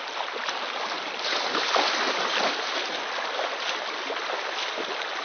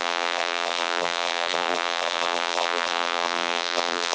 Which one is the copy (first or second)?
second